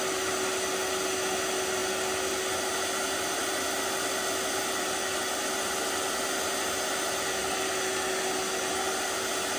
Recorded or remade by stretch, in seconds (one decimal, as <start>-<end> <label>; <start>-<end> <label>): 0.0-9.6 recorded